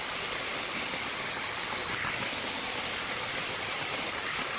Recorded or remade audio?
recorded